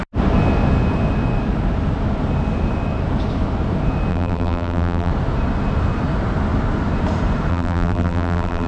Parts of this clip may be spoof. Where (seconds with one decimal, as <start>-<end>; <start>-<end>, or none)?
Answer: 4.1-5.1; 7.5-8.7